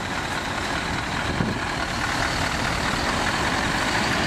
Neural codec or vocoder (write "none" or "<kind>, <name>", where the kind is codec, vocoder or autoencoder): none